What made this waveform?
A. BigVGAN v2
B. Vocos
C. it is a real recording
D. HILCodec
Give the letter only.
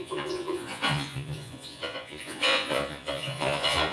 B